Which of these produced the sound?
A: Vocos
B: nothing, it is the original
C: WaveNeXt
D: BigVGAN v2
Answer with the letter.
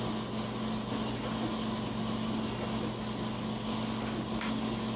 B